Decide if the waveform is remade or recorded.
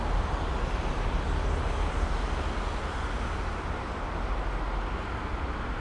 recorded